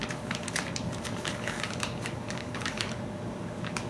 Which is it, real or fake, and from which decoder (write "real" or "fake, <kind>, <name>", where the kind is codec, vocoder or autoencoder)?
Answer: fake, codec, DAC